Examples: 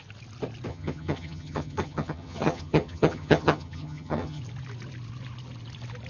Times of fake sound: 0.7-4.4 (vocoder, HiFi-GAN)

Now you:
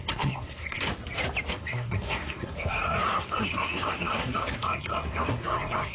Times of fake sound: 0.0-0.9 (codec, SNAC); 1.5-5.9

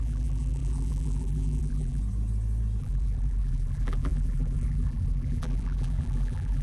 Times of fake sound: 0.0-2.0 (vocoder, BigVGAN v2); 2.8-6.6

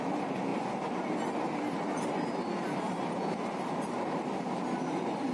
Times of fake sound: none

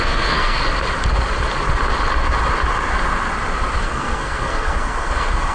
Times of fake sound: 0.0-0.6 (codec, SNAC); 3.8-5.5

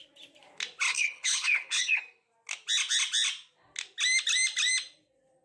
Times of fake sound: 0.9-2.0 (codec, HILCodec)